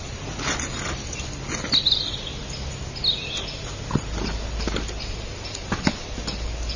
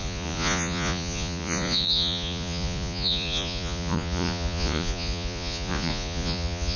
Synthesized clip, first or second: second